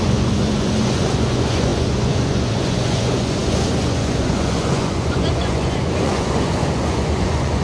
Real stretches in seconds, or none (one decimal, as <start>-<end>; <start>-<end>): none